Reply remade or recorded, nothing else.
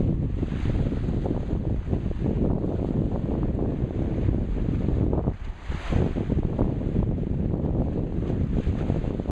recorded